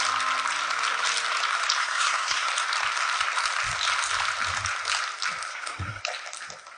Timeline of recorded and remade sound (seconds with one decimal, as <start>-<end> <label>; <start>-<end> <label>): 0.0-1.8 recorded; 1.8-2.5 remade; 2.5-5.5 recorded; 5.5-6.0 remade; 6.0-6.8 recorded